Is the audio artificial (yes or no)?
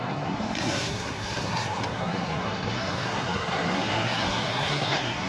yes